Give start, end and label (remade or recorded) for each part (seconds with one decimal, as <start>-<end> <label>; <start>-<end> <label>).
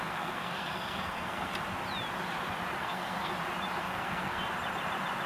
0.0-1.5 remade; 1.5-2.8 recorded; 2.8-3.3 remade; 3.3-3.8 recorded; 3.8-4.4 remade; 4.4-5.3 recorded